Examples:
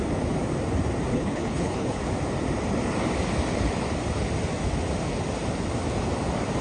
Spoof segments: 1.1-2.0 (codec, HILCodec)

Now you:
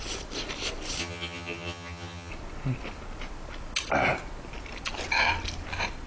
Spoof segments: 1.0-2.3 (vocoder, HiFi-GAN)

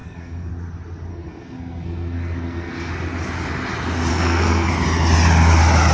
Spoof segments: 0.0-0.5 (codec, SNAC); 1.1-2.9; 4.1-4.7